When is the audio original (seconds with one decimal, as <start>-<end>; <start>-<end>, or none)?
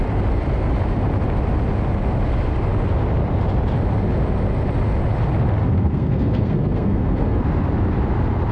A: 0.0-5.6; 7.4-8.5